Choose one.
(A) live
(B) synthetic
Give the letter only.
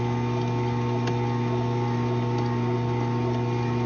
A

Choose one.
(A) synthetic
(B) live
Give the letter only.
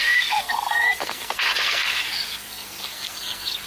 A